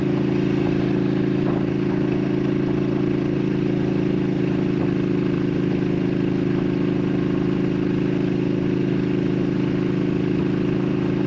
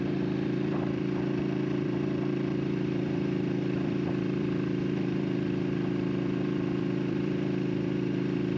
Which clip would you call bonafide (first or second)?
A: first